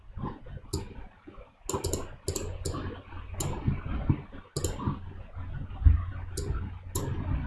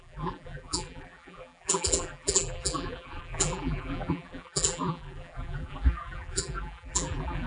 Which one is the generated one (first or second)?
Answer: second